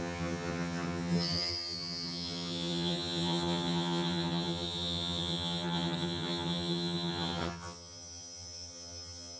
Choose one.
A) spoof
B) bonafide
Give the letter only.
A